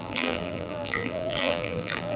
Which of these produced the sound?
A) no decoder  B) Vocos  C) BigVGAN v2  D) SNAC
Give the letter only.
C